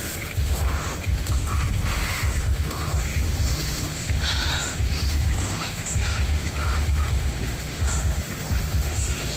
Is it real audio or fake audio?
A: fake